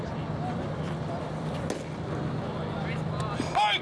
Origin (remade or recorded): recorded